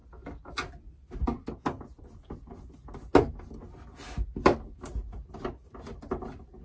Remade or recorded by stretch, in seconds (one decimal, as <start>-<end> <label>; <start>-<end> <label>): 0.0-6.6 recorded